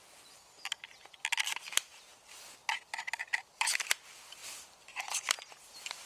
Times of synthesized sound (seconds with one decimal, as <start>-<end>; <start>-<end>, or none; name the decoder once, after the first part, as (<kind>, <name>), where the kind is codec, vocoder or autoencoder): none